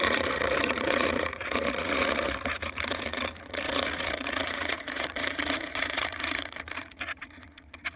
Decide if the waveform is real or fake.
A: fake